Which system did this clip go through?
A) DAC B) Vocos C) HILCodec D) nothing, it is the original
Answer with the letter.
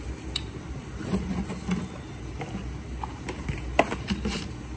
D